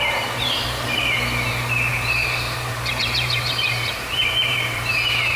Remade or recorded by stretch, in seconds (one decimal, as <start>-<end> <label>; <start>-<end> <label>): 0.0-1.9 recorded; 1.9-5.4 remade